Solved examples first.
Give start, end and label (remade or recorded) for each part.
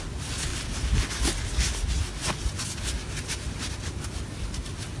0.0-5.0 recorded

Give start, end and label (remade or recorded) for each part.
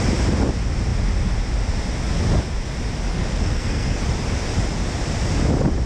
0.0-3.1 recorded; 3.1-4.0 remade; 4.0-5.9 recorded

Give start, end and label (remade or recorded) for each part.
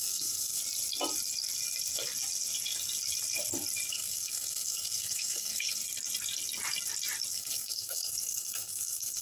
0.0-0.6 remade; 0.6-3.9 recorded; 3.9-5.8 remade; 5.8-7.3 recorded; 7.3-9.2 remade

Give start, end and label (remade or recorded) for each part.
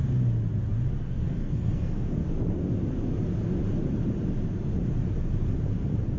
0.0-1.0 recorded; 1.0-2.2 remade; 2.2-6.2 recorded